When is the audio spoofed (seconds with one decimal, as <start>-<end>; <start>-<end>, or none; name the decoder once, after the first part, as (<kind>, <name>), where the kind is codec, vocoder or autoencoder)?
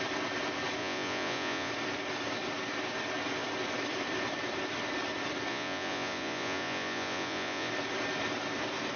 0.8-1.7 (vocoder, Vocos); 5.5-7.7